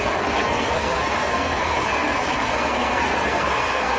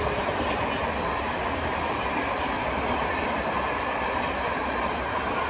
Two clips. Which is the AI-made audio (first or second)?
first